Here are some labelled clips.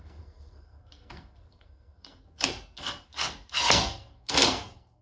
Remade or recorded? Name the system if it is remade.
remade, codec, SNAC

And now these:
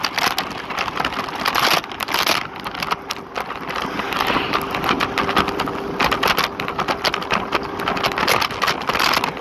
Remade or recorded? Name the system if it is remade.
recorded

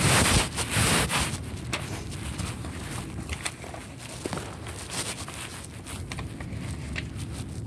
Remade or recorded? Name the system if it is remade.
recorded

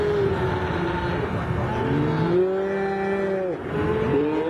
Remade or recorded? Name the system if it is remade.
recorded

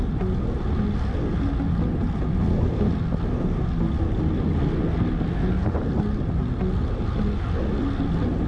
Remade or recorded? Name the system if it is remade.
recorded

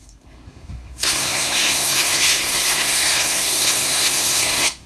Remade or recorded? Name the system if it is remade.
remade, codec, SNAC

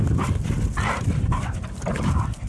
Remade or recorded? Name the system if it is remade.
recorded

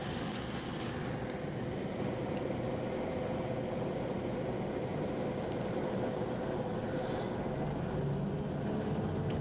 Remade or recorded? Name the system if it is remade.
recorded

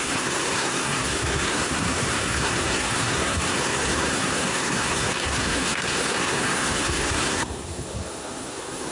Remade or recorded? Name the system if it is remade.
remade, codec, SNAC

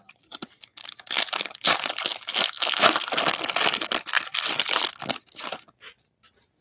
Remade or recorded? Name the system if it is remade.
recorded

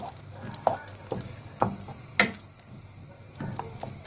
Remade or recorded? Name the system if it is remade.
recorded